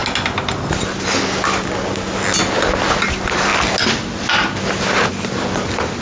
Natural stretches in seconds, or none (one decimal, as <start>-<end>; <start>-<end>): 0.0-6.0